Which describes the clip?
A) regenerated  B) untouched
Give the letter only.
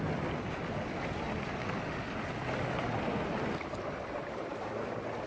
B